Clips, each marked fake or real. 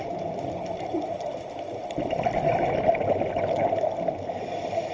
real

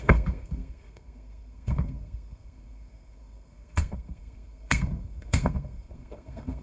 fake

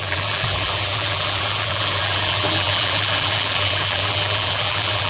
fake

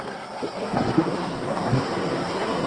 fake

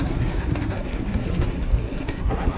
fake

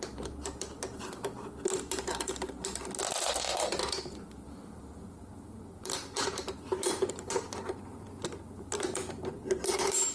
fake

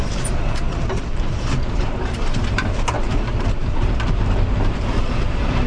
fake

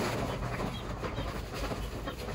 real